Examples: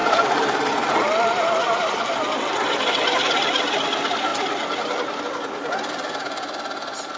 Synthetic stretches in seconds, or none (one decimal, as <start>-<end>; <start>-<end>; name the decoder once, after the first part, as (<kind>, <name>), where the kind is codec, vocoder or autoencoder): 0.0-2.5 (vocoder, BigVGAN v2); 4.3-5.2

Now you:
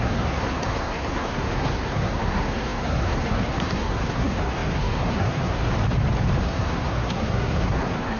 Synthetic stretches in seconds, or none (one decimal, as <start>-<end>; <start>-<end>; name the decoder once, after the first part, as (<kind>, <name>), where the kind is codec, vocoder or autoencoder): 0.0-5.7 (codec, SNAC); 6.4-8.2

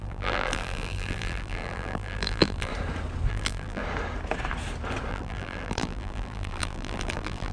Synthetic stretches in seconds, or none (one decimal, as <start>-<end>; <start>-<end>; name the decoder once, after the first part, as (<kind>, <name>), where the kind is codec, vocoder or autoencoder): 0.0-2.7 (vocoder, BigVGAN v2); 3.3-3.8; 5.1-7.5